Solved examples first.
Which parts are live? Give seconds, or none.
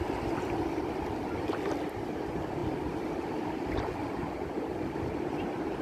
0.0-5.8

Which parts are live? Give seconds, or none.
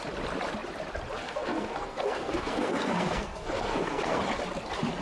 0.0-1.2; 4.2-5.0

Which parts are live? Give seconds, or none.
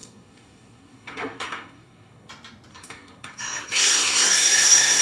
2.3-2.7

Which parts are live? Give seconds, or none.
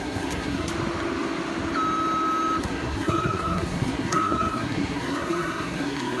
0.7-2.6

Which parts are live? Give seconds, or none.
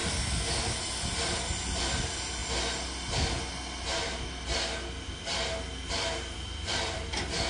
0.0-0.8; 2.4-5.9